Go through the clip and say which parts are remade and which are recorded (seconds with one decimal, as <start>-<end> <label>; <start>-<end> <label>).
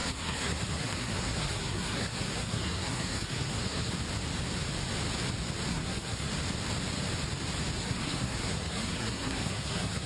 0.0-3.9 remade; 3.9-5.7 recorded; 5.7-6.3 remade; 6.3-7.8 recorded; 7.8-10.1 remade